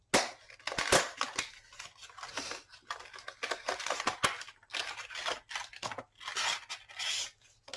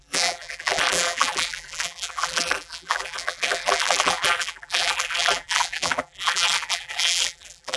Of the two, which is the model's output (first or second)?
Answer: second